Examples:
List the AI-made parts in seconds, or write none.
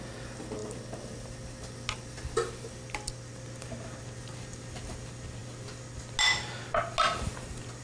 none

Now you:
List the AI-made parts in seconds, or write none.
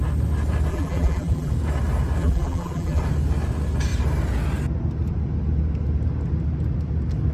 0.7-1.5; 2.2-3.0